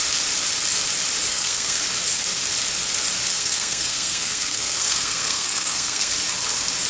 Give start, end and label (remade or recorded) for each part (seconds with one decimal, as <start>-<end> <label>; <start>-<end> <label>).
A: 0.0-1.3 recorded; 1.3-1.8 remade; 1.8-3.3 recorded; 3.3-6.1 remade; 6.1-6.9 recorded